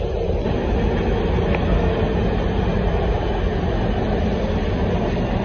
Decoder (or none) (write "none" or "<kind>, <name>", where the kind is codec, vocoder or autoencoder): none